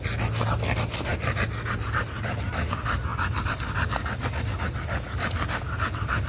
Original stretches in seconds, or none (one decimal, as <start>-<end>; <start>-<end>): 0.0-6.3